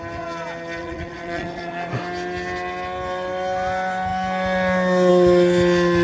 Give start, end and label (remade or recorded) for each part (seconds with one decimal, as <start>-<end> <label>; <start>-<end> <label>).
0.0-0.8 recorded; 0.8-1.9 remade; 1.9-6.0 recorded